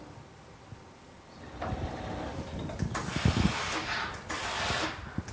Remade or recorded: recorded